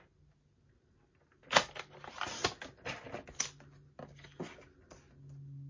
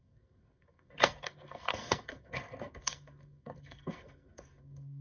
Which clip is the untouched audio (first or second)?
first